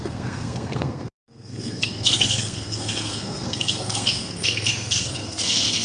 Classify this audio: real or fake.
fake